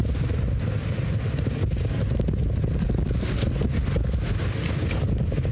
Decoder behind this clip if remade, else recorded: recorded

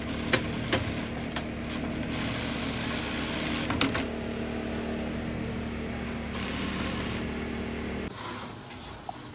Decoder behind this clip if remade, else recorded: recorded